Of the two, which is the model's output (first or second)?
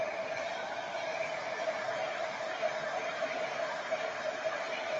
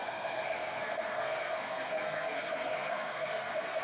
second